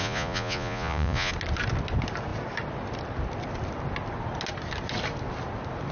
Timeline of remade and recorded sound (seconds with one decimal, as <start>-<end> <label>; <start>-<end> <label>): 0.0-1.3 remade; 1.3-5.9 recorded